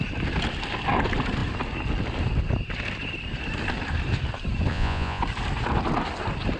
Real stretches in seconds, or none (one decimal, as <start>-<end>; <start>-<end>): 0.0-4.7; 5.2-6.6